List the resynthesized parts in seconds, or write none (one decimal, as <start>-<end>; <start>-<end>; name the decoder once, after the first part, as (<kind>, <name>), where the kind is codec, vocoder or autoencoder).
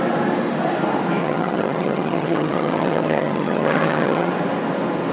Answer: 1.2-4.3 (vocoder, HiFi-GAN)